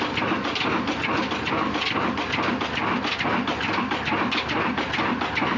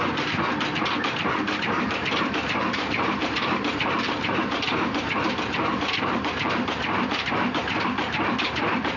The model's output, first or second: second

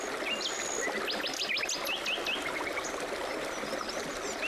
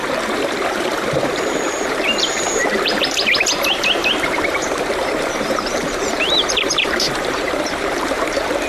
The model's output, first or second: second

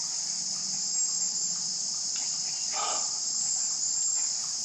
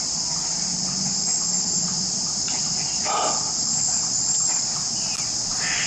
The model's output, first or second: second